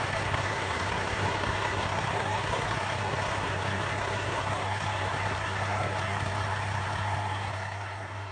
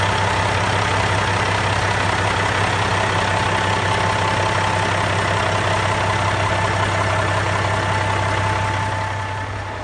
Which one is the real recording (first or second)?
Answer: second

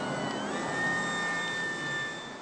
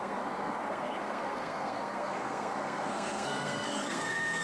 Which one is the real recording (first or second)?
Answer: first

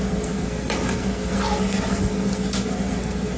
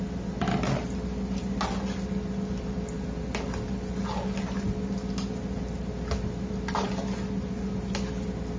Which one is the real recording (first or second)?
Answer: second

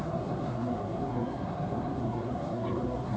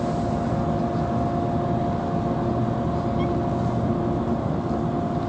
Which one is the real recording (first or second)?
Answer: second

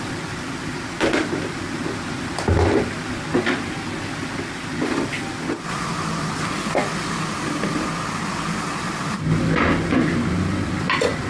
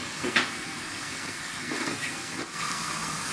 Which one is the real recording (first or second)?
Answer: first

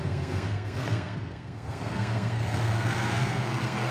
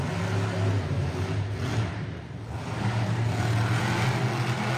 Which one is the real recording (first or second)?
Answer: second